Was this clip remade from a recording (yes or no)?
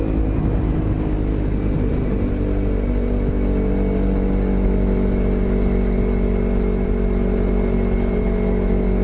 no